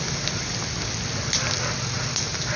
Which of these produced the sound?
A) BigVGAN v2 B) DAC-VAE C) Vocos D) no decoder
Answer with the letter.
D